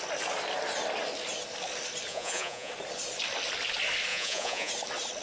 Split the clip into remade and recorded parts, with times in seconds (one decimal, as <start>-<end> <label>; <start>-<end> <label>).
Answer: 0.0-2.1 recorded; 2.1-2.7 remade; 2.7-4.1 recorded; 4.1-4.7 remade; 4.7-5.2 recorded